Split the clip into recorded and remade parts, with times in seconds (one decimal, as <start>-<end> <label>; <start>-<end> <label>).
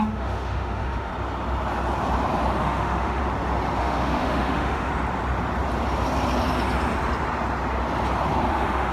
0.0-1.1 remade; 1.1-2.6 recorded; 2.6-3.2 remade; 3.2-3.8 recorded; 3.8-4.9 remade; 4.9-8.5 recorded; 8.5-8.9 remade